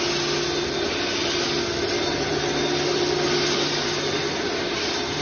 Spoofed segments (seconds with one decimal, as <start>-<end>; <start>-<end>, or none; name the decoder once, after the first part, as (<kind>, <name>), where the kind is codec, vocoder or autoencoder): none